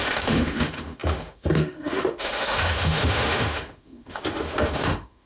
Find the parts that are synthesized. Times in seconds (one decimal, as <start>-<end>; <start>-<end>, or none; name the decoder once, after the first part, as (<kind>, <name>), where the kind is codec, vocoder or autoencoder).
0.0-5.3 (autoencoder, DAC-VAE)